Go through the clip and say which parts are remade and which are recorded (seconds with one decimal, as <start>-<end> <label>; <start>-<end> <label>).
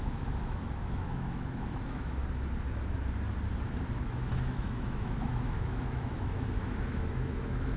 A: 0.0-2.2 remade; 2.2-4.0 recorded; 4.0-7.8 remade